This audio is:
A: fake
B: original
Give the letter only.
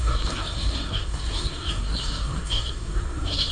A